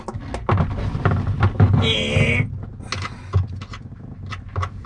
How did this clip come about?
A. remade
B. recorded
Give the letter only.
B